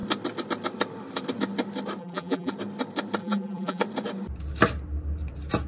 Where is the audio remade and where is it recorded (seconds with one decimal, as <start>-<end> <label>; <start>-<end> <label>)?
0.0-2.0 recorded; 2.0-2.5 remade; 2.5-3.2 recorded; 3.2-3.8 remade; 3.8-5.7 recorded